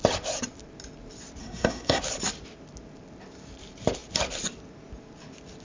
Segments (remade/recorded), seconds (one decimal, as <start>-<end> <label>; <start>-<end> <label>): 0.0-1.4 recorded; 1.4-2.0 remade; 2.0-5.6 recorded